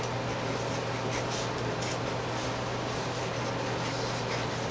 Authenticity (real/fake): real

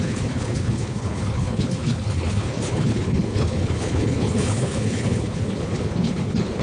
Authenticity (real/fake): fake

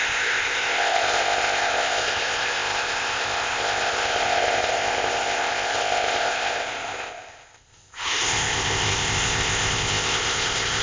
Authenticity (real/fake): fake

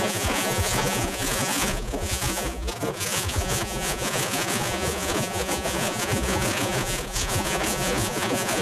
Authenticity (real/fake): fake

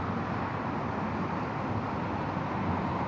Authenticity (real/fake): real